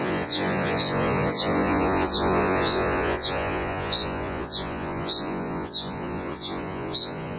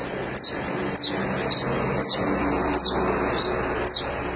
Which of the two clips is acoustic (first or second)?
second